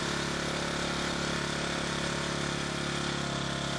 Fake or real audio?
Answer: real